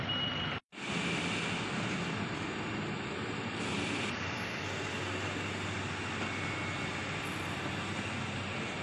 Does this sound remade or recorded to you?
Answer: recorded